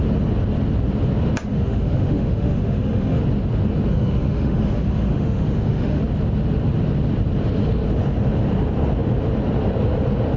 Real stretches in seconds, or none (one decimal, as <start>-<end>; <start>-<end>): 0.0-1.5; 3.2-3.9; 6.0-10.4